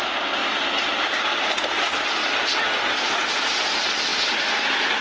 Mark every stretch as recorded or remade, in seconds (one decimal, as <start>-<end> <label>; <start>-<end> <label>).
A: 0.0-0.4 remade; 0.4-1.2 recorded; 1.2-2.2 remade; 2.2-2.8 recorded; 2.8-5.0 remade